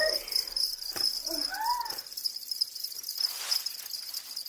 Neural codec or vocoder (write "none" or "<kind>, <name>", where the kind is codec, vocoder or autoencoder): none